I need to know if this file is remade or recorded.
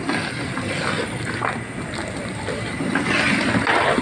recorded